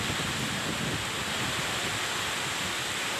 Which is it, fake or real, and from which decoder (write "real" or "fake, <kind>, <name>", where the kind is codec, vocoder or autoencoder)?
real